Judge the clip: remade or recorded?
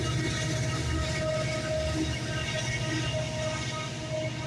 recorded